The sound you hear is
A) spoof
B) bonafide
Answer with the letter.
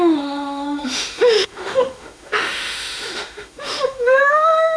A